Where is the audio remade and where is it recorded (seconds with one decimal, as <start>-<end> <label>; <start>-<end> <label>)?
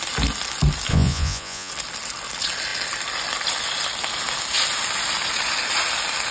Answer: 0.0-0.9 recorded; 0.9-1.7 remade; 1.7-6.3 recorded